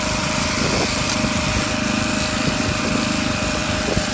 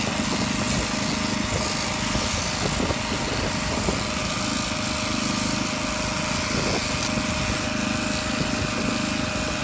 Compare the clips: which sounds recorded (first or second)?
second